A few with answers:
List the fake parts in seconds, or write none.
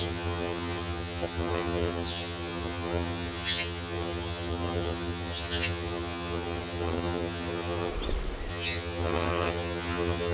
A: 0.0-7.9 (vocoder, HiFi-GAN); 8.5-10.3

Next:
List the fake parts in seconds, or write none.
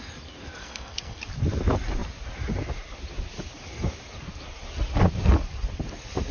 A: 0.6-1.2 (codec, SNAC)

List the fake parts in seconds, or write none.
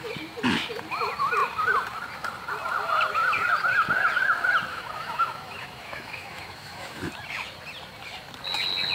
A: 4.7-7.0 (autoencoder, DAC-VAE)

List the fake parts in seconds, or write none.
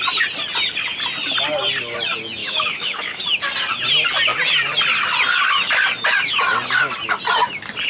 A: 2.4-3.2 (autoencoder, DAC-VAE)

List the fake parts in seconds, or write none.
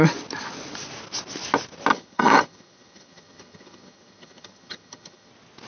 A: 1.9-5.3 (vocoder, HiFi-GAN)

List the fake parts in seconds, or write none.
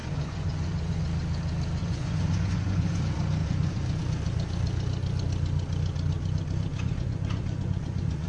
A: 0.0-1.0 (vocoder, Vocos); 1.8-3.0; 3.4-4.0; 6.7-8.3